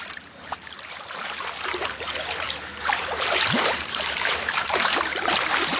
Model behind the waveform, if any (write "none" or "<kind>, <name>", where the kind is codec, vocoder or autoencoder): vocoder, BigVGAN v2